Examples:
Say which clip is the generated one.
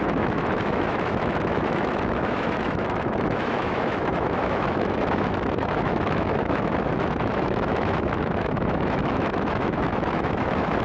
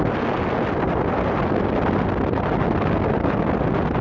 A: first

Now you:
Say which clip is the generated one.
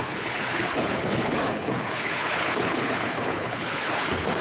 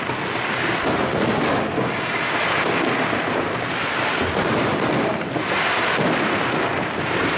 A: first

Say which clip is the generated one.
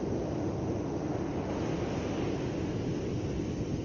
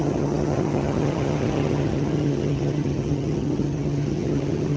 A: second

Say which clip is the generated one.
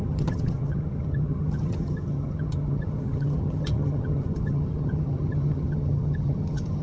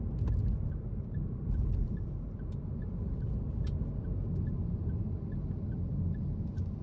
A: first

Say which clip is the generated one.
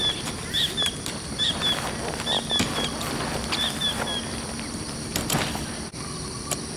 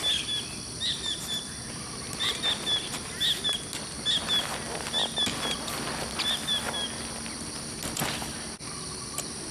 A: first